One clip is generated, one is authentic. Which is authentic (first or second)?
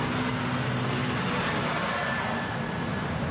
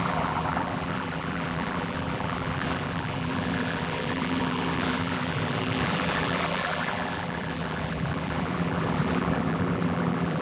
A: first